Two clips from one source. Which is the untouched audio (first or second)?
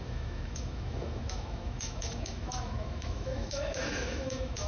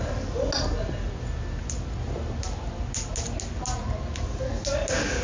second